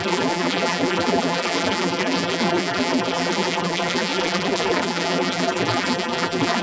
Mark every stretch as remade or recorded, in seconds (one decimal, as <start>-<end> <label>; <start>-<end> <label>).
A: 0.0-6.6 remade